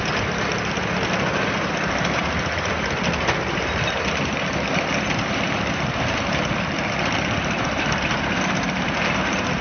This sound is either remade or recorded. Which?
recorded